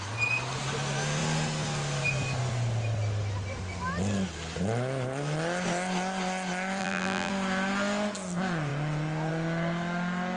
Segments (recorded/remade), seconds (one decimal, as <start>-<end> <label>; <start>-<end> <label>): 0.0-6.8 recorded; 6.8-7.3 remade; 7.3-10.4 recorded